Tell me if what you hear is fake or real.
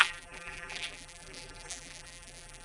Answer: fake